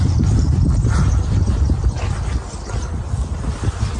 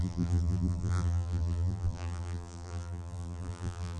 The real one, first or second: first